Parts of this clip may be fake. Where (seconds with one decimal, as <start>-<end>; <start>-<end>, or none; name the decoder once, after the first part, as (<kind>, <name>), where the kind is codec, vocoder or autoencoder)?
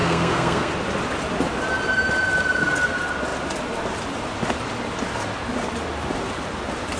0.0-0.7 (codec, SNAC)